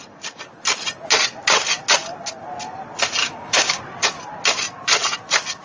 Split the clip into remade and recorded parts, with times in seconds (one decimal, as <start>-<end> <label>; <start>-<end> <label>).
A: 0.0-3.2 recorded; 3.2-3.8 remade; 3.8-5.6 recorded